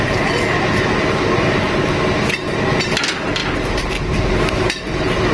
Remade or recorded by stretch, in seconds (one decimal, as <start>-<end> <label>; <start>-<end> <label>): 0.0-5.3 recorded